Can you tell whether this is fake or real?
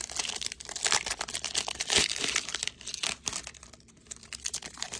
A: real